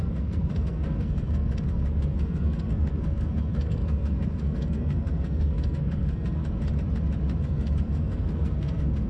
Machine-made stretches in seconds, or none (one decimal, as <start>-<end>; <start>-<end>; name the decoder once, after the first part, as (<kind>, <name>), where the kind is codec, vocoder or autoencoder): 0.0-6.4 (codec, SNAC); 7.4-9.1